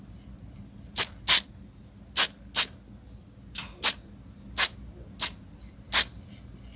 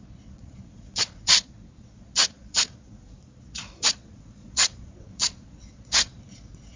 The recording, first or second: first